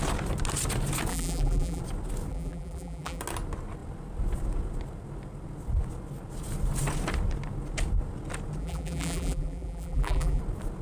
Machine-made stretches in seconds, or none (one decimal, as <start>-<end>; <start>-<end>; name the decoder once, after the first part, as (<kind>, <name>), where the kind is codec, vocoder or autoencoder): 1.1-1.8 (vocoder, BigVGAN v2); 2.3-3.2; 8.6-10.4